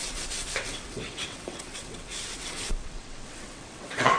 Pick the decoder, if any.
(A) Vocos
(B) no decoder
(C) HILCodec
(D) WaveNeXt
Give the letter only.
D